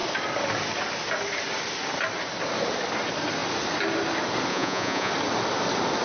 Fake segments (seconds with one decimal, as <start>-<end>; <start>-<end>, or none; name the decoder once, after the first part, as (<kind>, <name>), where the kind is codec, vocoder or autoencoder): 4.5-5.1 (vocoder, Vocos)